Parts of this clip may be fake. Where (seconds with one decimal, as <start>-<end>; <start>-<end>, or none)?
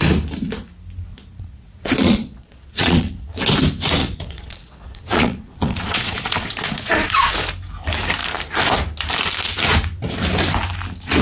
1.1-3.3; 4.0-7.3